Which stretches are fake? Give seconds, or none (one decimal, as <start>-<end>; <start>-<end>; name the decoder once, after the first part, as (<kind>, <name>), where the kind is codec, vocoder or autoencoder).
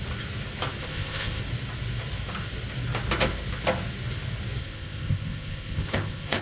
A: 0.8-1.4 (codec, ZipCodec); 4.6-6.4